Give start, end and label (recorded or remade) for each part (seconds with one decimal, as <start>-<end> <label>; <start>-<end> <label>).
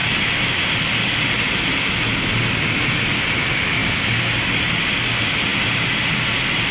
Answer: 0.0-6.7 recorded